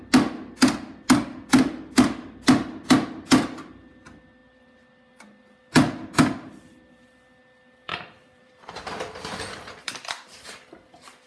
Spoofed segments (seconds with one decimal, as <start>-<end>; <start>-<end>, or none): 7.9-11.3

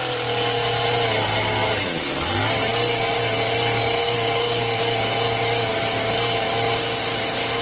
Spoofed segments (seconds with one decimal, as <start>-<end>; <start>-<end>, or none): 4.0-4.8

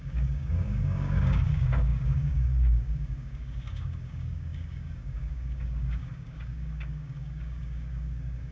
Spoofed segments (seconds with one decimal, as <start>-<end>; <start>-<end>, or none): 0.0-8.5

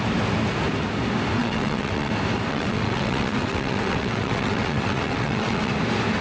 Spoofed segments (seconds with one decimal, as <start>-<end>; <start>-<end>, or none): 1.4-2.1; 2.5-5.7

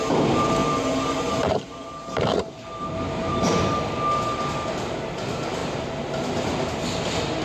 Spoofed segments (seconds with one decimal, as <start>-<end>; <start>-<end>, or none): 0.6-3.8; 5.6-6.3

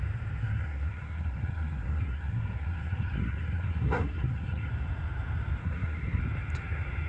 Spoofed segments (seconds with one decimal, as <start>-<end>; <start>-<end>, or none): 0.4-4.7; 5.6-6.2

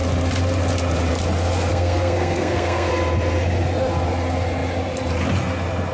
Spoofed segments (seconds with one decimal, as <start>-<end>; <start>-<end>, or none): 1.7-2.9

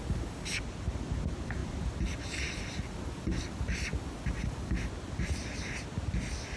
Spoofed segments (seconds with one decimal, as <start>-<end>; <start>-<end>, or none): none